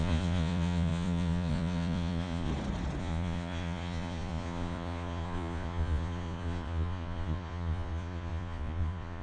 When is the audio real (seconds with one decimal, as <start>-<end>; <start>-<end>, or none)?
2.5-3.0